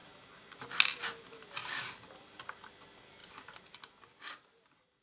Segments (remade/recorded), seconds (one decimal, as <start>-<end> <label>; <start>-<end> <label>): 0.0-5.0 recorded